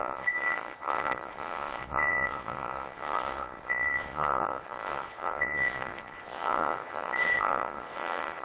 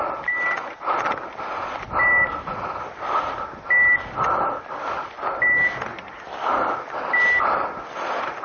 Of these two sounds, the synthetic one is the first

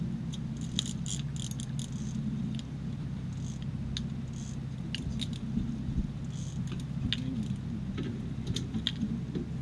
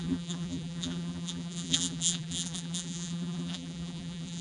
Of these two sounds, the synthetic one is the second